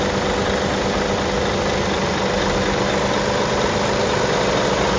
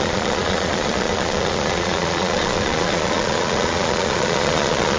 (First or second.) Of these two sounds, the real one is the first